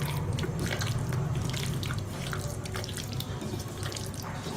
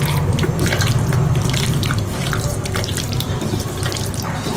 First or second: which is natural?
first